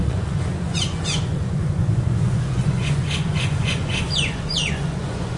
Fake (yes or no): yes